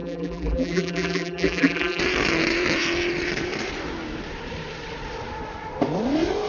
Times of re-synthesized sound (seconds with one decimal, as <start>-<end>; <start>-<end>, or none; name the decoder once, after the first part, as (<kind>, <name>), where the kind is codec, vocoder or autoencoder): 0.0-2.0 (vocoder, BigVGAN v2)